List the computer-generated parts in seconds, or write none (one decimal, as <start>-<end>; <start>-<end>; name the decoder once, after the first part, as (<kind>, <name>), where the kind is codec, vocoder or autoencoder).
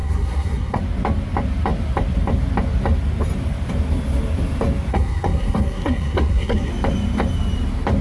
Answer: 0.0-0.8 (codec, SNAC); 4.9-6.7